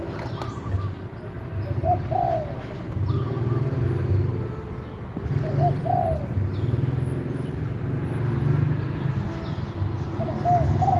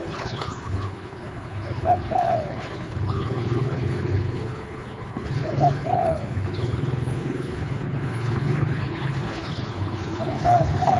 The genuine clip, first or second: first